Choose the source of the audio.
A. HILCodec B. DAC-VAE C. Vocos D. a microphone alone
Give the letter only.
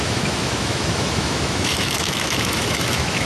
B